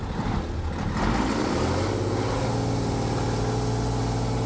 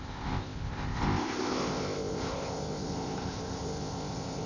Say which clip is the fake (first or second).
second